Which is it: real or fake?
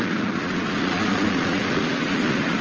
fake